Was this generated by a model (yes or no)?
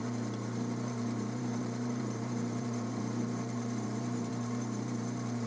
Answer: yes